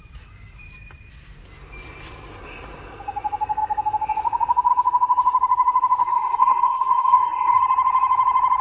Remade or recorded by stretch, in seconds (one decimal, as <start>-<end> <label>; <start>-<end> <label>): 0.0-6.0 recorded; 6.0-7.6 remade; 7.6-8.6 recorded